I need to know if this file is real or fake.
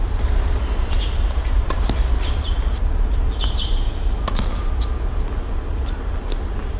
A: real